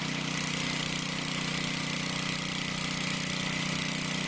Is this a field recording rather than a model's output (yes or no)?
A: yes